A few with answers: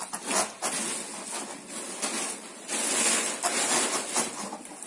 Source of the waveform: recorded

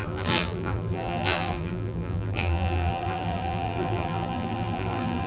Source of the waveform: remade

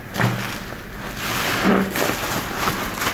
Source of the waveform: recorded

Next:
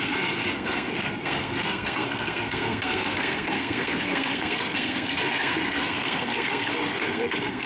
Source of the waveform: remade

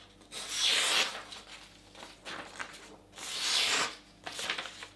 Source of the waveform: recorded